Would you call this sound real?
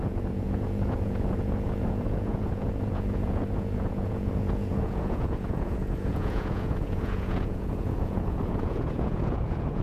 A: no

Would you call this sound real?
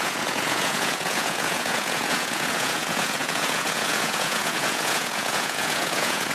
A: no